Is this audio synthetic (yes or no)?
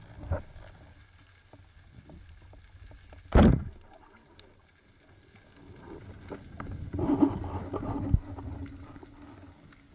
no